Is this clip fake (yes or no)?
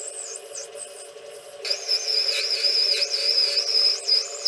no